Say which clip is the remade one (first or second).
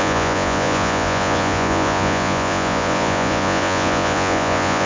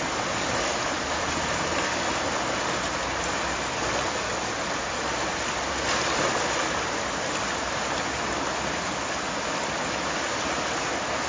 first